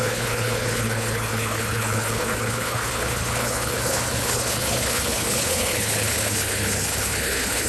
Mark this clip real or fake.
fake